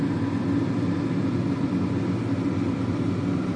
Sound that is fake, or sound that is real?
real